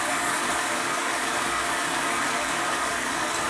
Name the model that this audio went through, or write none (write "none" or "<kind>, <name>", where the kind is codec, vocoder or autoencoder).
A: codec, DAC